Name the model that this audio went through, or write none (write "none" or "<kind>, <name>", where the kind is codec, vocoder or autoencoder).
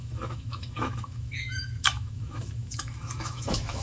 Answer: autoencoder, DAC-VAE